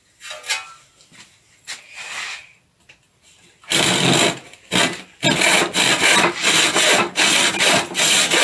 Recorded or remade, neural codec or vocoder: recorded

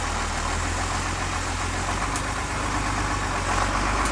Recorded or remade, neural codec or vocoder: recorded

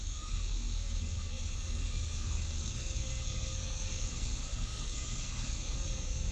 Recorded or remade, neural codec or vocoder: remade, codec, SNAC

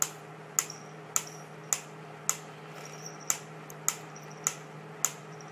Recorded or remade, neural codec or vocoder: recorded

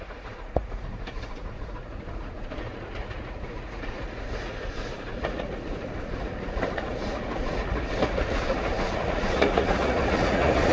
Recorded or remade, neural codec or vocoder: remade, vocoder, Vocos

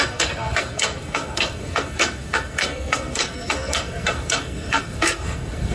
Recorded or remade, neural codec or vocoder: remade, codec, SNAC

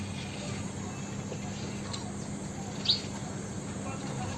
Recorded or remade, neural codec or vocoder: recorded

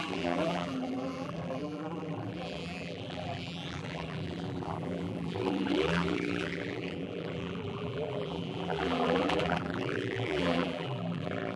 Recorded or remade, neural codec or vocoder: remade, vocoder, BigVGAN v2